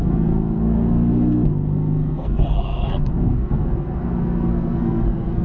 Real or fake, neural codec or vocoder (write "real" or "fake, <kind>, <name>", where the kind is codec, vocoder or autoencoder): fake, codec, SNAC